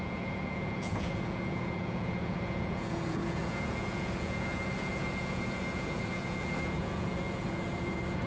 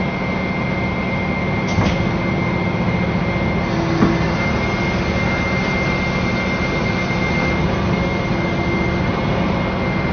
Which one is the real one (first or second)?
second